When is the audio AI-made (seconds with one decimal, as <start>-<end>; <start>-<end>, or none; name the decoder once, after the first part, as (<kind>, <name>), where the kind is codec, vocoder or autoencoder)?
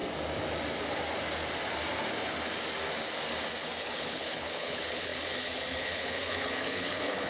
3.8-7.3 (codec, HILCodec)